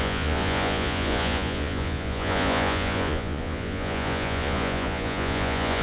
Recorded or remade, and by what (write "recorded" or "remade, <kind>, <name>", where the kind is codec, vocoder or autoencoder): remade, vocoder, Vocos